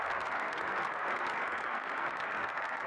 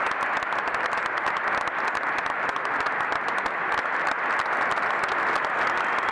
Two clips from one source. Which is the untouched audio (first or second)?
second